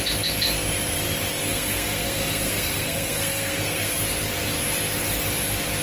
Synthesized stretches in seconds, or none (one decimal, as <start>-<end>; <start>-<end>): 1.5-4.0